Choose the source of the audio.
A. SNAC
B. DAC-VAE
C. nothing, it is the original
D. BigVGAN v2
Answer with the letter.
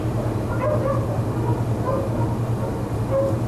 C